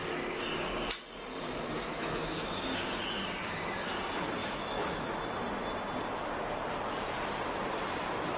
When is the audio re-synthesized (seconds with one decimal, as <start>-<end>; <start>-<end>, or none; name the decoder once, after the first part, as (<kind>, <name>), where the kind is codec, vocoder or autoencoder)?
1.9-2.6 (autoencoder, DAC-VAE); 4.4-5.2